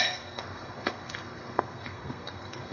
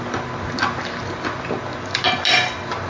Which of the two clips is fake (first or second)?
first